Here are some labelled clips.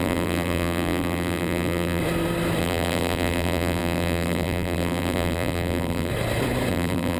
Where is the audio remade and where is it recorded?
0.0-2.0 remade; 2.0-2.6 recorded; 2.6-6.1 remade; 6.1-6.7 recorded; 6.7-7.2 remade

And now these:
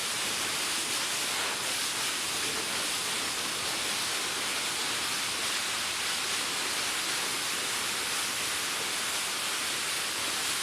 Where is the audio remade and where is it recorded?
0.0-0.9 remade; 0.9-10.6 recorded